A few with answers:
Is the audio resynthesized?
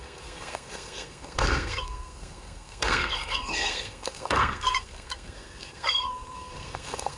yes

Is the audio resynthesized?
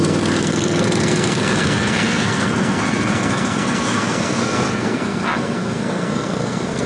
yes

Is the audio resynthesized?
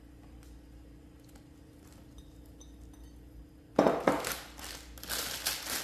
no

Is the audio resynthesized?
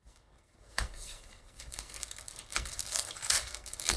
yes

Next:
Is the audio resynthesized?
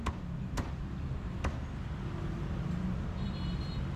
no